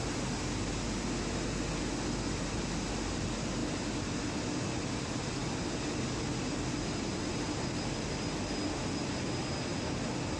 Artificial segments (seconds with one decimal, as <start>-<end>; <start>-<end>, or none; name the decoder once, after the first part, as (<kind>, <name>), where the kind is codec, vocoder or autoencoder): none